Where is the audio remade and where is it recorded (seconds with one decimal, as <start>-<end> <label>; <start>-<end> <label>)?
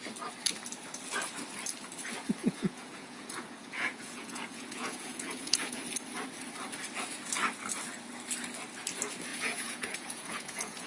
0.0-2.4 recorded; 2.4-5.8 remade; 5.8-9.3 recorded; 9.3-10.9 remade